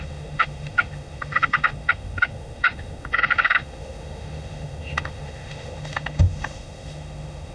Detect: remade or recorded remade